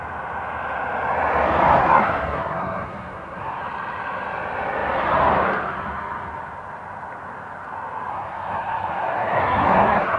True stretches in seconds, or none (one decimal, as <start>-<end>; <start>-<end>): 0.0-1.8; 3.6-8.1